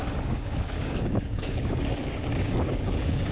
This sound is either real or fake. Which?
fake